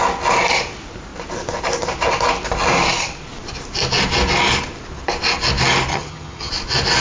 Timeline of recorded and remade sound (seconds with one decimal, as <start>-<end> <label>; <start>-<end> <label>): 0.0-5.9 recorded; 5.9-6.5 remade; 6.5-7.0 recorded

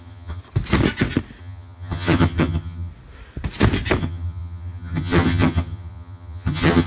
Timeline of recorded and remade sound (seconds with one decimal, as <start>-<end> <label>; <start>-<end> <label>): 0.0-0.4 remade; 0.4-1.4 recorded; 1.4-2.9 remade; 2.9-4.0 recorded; 4.0-6.9 remade

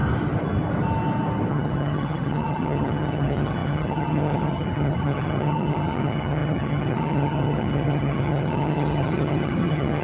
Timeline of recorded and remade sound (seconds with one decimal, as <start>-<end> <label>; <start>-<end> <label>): 0.0-1.5 recorded; 1.5-10.0 remade

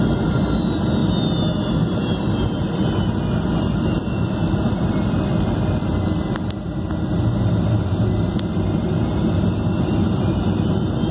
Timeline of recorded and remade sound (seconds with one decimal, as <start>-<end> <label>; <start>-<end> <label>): 0.0-11.1 recorded